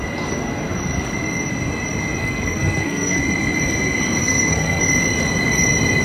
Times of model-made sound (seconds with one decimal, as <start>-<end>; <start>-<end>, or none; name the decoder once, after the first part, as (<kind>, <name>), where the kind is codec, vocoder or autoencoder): 2.2-3.2 (codec, SNAC); 4.2-4.9